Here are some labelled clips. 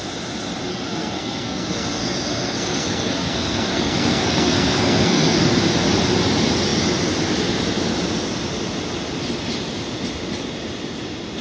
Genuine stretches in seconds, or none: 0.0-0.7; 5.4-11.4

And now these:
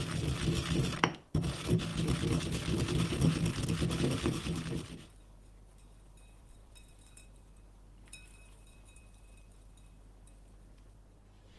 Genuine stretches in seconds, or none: 1.9-2.4; 3.3-4.0

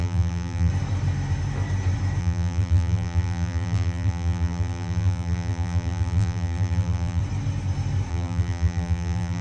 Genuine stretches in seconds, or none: 0.7-2.2; 7.2-8.1

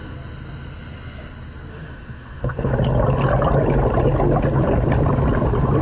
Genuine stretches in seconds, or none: 0.0-1.7; 2.7-5.8